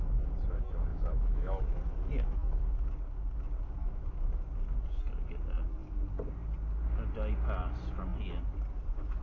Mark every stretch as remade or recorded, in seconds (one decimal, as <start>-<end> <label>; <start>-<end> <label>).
0.0-0.9 recorded; 0.9-1.8 remade; 1.8-3.8 recorded; 3.8-4.5 remade; 4.5-9.2 recorded